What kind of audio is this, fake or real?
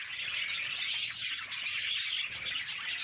real